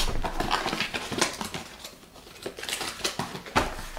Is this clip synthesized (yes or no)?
no